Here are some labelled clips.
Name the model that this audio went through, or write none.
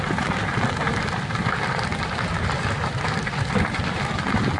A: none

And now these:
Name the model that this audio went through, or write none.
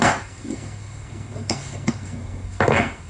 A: codec, SNAC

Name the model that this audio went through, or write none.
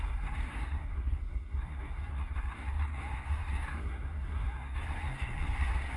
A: codec, SNAC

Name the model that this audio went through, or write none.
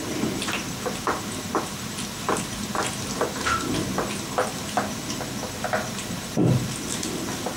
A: none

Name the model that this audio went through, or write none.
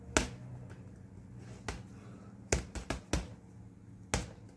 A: none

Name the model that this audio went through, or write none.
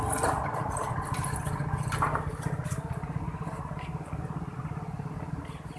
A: none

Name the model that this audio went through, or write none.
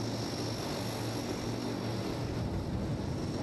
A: none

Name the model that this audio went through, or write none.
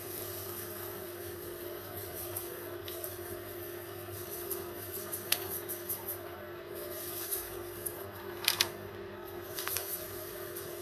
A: codec, SNAC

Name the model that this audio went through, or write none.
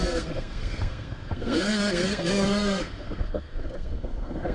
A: codec, SNAC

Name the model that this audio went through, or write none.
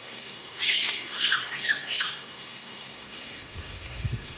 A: codec, SNAC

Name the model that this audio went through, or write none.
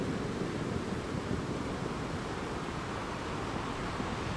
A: none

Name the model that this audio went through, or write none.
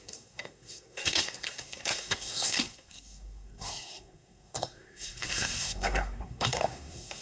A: codec, SNAC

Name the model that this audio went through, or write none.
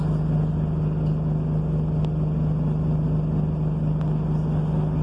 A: none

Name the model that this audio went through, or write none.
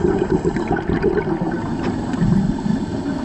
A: none